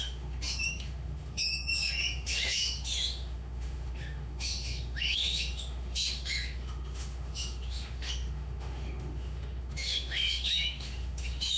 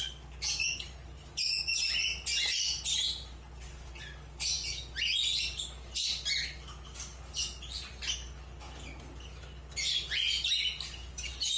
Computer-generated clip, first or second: first